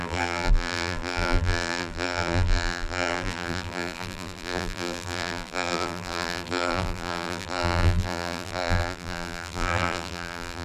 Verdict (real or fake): fake